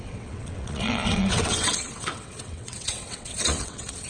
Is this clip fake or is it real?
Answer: fake